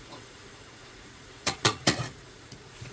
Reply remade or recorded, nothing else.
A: remade